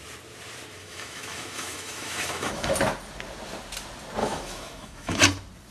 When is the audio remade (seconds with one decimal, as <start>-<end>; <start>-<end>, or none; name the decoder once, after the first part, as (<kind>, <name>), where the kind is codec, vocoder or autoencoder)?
0.8-2.7 (autoencoder, DAC-VAE); 4.2-5.2

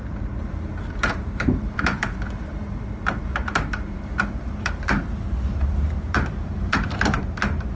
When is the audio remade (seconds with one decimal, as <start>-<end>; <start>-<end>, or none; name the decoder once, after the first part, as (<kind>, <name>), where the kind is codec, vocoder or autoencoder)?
0.0-7.7 (vocoder, BigVGAN v2)

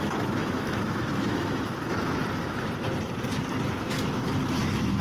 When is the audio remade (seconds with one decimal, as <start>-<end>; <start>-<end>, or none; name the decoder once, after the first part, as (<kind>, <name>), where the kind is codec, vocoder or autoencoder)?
0.0-2.2 (autoencoder, DAC-VAE); 3.8-5.0

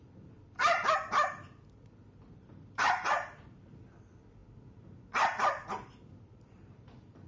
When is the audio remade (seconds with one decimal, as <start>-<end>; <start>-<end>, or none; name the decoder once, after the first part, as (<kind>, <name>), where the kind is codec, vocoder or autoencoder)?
0.0-4.4 (vocoder, BigVGAN v2); 6.7-7.3

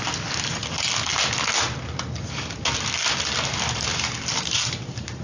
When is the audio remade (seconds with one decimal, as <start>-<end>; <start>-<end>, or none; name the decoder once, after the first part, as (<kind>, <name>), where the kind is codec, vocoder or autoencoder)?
3.9-5.2 (vocoder, BigVGAN v2)

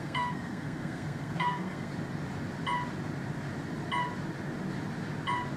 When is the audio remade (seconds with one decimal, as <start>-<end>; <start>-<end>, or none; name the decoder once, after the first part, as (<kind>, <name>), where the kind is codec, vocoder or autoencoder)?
0.0-1.9 (codec, SNAC)

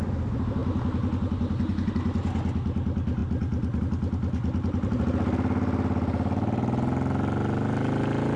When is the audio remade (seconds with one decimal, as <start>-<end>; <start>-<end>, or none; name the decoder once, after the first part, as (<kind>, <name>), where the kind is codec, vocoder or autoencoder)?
none